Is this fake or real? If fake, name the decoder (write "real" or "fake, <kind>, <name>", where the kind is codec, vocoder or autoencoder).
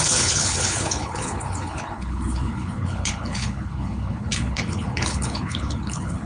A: fake, codec, HILCodec